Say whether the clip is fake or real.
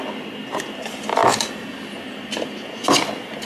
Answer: real